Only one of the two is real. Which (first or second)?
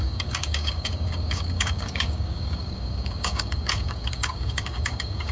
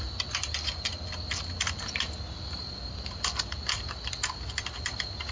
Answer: second